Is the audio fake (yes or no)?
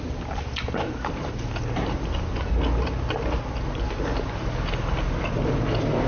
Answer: no